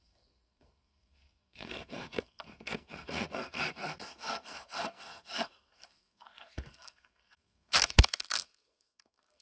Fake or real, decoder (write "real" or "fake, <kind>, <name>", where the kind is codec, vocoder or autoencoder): fake, codec, SNAC